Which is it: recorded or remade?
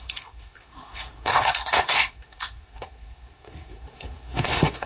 remade